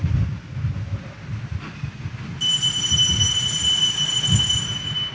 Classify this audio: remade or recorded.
recorded